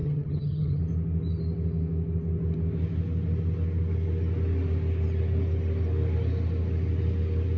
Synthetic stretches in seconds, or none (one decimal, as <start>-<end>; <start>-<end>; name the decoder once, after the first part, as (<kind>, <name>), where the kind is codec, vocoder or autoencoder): 0.0-0.8 (vocoder, HiFi-GAN)